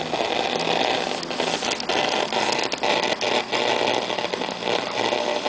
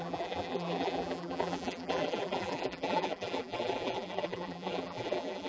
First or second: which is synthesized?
second